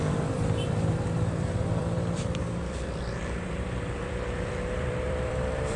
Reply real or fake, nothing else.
fake